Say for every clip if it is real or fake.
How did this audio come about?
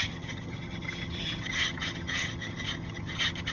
fake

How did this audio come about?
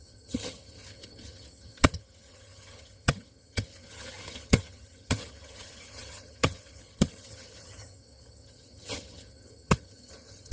fake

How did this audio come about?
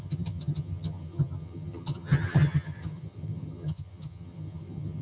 fake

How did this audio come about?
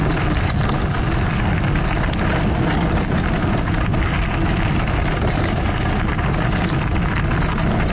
real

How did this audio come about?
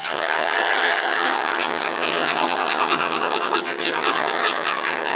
fake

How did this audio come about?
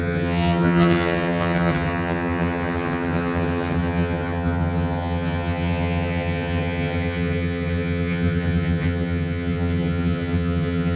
fake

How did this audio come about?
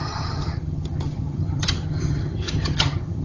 fake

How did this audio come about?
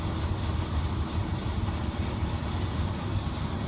real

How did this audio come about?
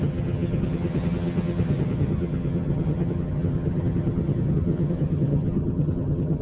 fake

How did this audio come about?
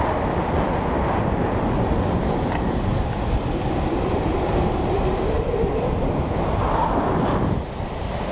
real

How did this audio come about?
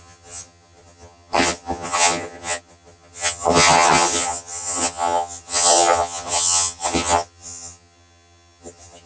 fake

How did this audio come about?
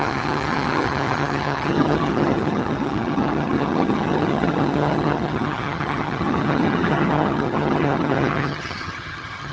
fake